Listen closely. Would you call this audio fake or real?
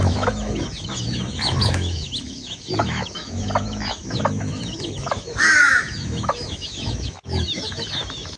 fake